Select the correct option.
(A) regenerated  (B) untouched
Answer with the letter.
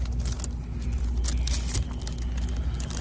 B